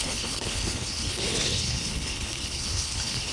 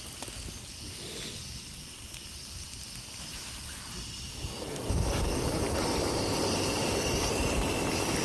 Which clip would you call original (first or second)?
second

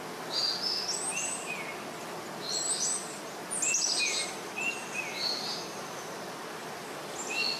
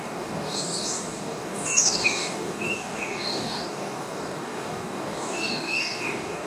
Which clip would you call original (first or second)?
first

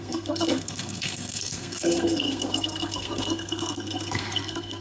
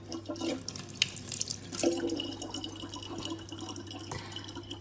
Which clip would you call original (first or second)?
second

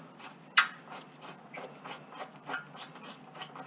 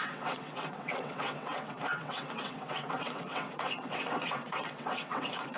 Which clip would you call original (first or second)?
first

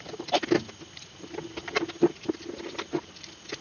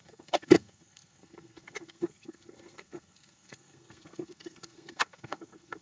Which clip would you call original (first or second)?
first